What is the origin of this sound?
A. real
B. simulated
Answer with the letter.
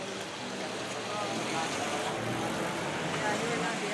A